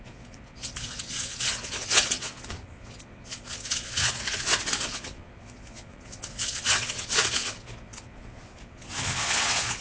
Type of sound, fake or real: fake